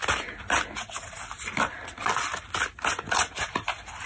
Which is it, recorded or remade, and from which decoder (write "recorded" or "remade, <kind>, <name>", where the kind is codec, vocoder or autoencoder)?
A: recorded